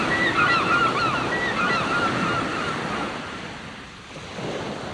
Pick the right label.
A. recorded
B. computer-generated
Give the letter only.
A